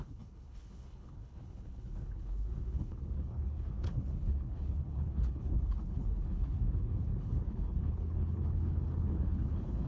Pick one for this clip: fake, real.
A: fake